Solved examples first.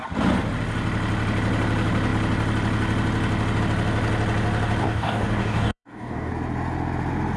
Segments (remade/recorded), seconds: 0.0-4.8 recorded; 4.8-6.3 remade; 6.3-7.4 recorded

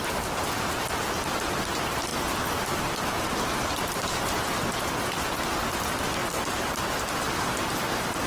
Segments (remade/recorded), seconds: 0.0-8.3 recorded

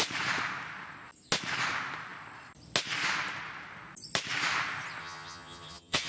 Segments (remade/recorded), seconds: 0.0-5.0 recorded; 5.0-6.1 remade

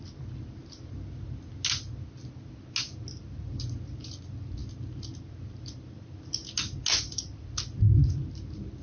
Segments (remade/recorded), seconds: 0.0-0.6 remade; 0.6-3.1 recorded; 3.1-4.6 remade; 4.6-5.4 recorded; 5.4-6.4 remade; 6.4-6.9 recorded; 6.9-8.8 remade

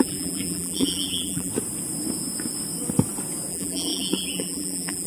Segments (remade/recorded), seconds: 0.0-1.5 remade; 1.5-3.5 recorded; 3.5-5.1 remade

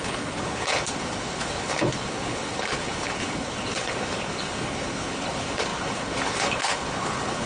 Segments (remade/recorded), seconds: 0.0-7.5 remade